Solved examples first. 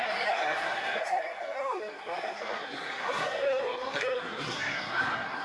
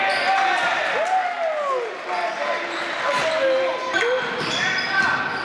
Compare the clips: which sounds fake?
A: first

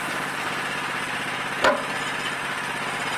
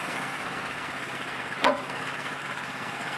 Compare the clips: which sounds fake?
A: second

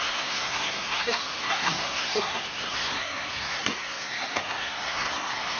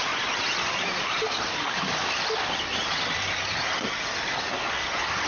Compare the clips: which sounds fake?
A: first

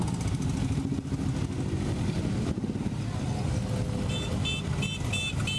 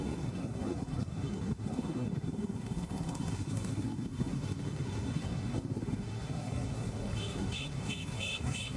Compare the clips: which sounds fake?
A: second